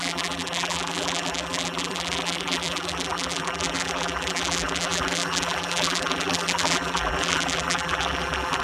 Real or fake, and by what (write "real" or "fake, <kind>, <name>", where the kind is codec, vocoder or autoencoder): fake, vocoder, BigVGAN v2